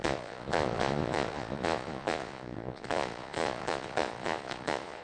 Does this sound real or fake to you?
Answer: fake